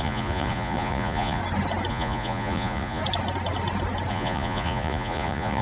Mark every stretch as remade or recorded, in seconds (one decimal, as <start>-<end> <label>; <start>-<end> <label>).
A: 0.0-1.4 remade; 1.4-1.9 recorded; 1.9-3.0 remade; 3.0-4.1 recorded; 4.1-5.6 remade